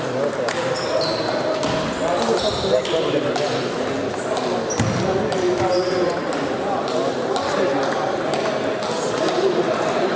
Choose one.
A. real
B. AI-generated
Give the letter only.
A